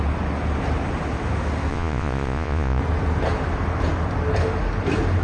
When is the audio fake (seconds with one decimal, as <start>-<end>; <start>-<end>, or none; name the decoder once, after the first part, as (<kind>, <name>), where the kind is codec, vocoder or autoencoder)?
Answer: 1.7-2.8 (vocoder, Vocos)